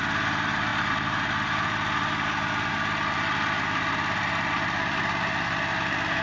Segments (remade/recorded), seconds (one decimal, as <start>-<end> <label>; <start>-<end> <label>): 0.0-6.2 recorded